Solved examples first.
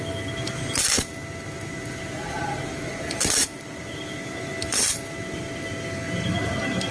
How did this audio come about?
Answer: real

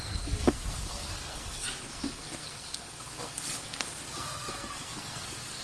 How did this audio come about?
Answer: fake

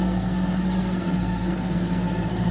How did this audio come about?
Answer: fake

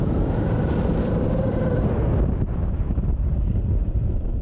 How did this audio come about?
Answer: fake